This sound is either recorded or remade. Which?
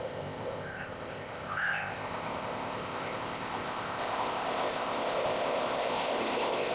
remade